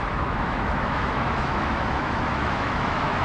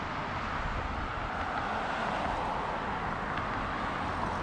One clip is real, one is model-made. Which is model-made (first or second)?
first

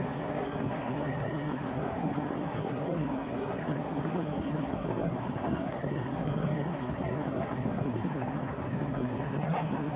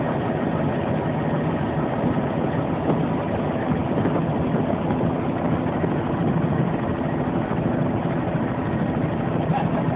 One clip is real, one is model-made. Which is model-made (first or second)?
first